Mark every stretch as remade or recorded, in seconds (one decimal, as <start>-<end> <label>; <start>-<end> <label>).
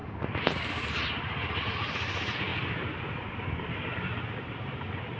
0.0-5.2 recorded